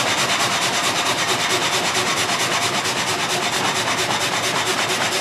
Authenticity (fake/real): real